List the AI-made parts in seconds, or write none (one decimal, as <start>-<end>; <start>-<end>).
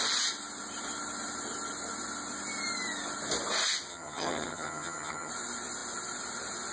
3.9-5.3